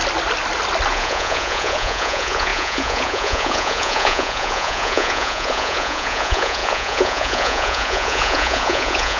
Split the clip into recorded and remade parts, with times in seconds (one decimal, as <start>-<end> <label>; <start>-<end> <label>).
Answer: 0.0-0.9 recorded; 0.9-9.2 remade